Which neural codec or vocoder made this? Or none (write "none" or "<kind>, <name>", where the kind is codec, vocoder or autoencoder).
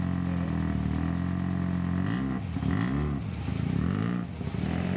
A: none